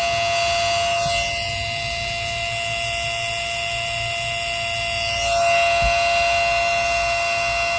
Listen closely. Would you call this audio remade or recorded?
recorded